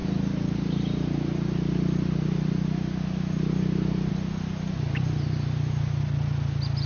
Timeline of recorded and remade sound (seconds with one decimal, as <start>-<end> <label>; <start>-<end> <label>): 0.0-6.9 recorded